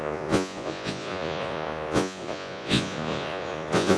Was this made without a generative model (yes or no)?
no